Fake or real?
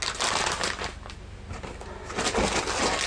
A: real